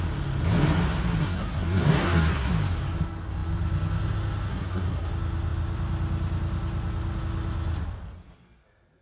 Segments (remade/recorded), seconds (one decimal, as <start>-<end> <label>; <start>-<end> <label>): 0.0-1.2 recorded; 1.2-2.5 remade; 2.5-4.5 recorded; 4.5-5.1 remade; 5.1-9.0 recorded